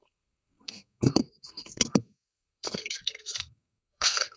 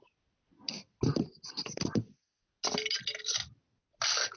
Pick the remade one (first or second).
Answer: first